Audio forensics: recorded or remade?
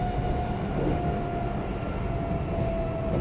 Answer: recorded